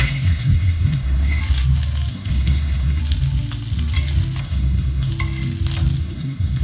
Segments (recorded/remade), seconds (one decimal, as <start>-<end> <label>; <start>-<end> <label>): 0.0-1.4 remade; 1.4-2.1 recorded; 2.1-3.0 remade; 3.0-4.4 recorded; 4.4-5.1 remade; 5.1-6.0 recorded; 6.0-6.6 remade